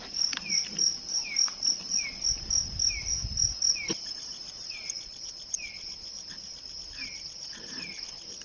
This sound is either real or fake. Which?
real